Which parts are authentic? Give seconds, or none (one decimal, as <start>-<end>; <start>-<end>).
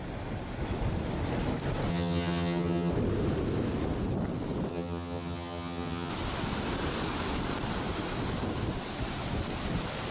0.0-1.9; 2.9-4.7; 6.1-10.1